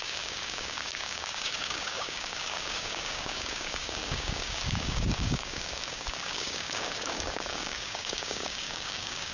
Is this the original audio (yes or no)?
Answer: no